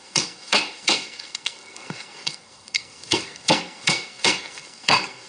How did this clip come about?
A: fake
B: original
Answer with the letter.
A